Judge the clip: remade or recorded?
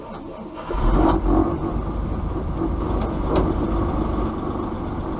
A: recorded